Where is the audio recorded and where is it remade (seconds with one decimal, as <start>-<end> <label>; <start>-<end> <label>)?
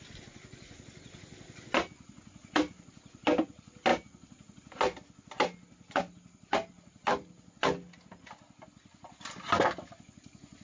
0.0-10.6 recorded